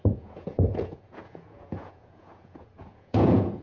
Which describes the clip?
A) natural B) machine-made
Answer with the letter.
B